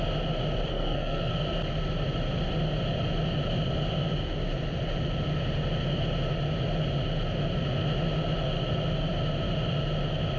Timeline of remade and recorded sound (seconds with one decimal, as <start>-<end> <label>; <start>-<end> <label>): 0.0-0.7 recorded; 0.7-1.3 remade; 1.3-10.4 recorded